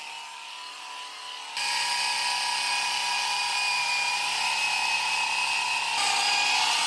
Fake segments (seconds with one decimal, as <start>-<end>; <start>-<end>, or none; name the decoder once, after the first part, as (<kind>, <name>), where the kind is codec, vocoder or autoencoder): 3.4-6.4 (vocoder, BigVGAN v2)